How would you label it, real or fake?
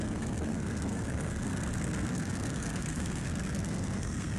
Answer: fake